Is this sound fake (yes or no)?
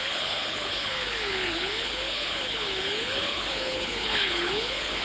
yes